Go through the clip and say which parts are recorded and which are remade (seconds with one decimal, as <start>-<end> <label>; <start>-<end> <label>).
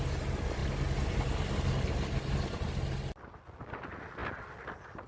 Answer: 0.0-5.1 recorded